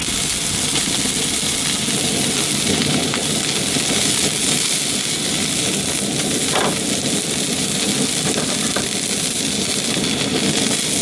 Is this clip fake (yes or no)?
no